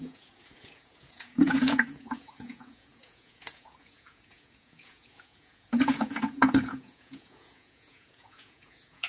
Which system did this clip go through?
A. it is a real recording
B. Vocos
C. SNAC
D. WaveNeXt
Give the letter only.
B